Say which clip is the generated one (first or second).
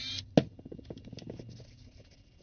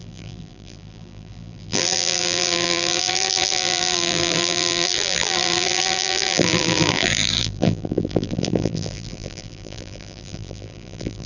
second